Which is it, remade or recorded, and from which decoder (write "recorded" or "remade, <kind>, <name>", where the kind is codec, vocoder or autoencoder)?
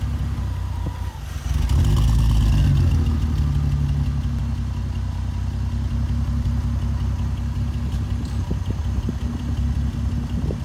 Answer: recorded